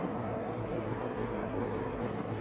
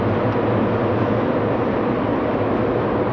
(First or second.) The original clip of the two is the second